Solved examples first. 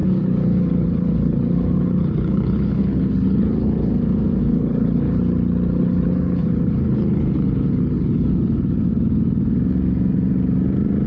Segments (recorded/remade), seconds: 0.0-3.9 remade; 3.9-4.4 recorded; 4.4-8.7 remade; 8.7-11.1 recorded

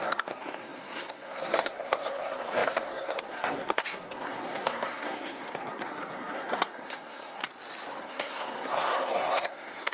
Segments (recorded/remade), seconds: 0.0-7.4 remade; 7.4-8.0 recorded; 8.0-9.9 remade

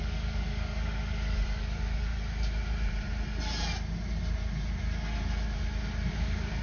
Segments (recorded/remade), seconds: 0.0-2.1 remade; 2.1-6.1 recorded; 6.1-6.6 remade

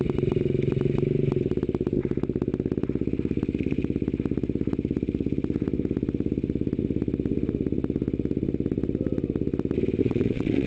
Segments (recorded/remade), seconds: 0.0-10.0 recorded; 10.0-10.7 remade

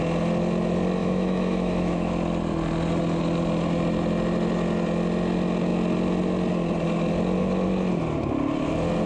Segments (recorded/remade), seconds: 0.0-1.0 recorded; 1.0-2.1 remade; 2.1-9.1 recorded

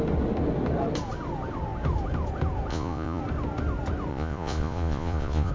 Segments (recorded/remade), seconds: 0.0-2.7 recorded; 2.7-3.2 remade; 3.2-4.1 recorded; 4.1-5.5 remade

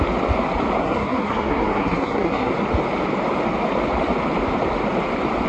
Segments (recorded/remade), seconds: 0.0-0.8 recorded; 0.8-2.5 remade; 2.5-5.5 recorded

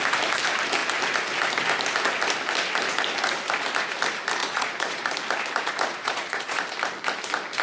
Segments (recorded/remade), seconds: 0.0-4.4 recorded; 4.4-5.0 remade; 5.0-6.0 recorded; 6.0-6.6 remade; 6.6-7.6 recorded